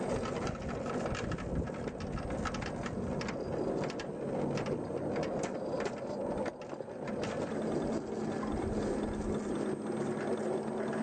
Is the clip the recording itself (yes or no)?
yes